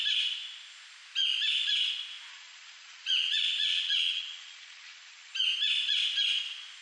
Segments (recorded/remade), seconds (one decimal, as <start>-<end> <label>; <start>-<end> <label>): 0.0-2.3 recorded; 2.3-5.3 remade; 5.3-6.8 recorded